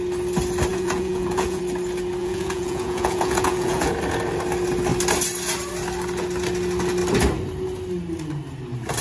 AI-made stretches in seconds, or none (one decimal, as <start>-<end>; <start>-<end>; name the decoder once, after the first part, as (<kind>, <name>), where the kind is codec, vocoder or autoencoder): 0.7-1.6 (vocoder, Vocos); 2.2-3.9